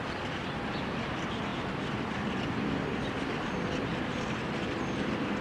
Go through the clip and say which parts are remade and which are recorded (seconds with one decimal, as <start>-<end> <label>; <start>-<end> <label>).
0.0-5.4 recorded